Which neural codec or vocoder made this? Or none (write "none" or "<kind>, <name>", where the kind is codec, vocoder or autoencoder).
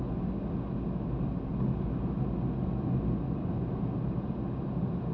none